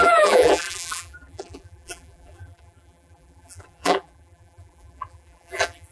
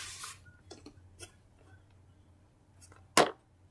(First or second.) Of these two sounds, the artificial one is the first